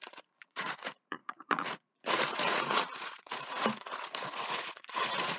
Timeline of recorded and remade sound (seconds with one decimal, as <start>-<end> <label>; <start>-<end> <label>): 0.0-5.4 remade